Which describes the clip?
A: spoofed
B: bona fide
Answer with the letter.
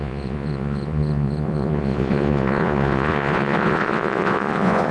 A